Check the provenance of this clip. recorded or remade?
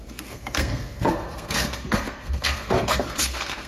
remade